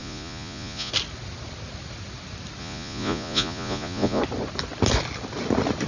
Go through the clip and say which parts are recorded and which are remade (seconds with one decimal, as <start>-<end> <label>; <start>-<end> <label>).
0.0-0.9 remade; 0.9-2.6 recorded; 2.6-4.2 remade; 4.2-5.9 recorded